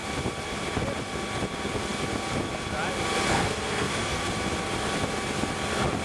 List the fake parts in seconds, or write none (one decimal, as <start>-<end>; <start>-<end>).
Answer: 3.3-4.3